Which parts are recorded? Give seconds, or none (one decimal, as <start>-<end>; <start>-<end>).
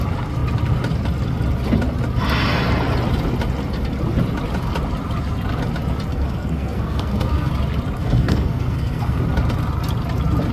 0.0-6.1; 7.5-8.0; 9.2-10.5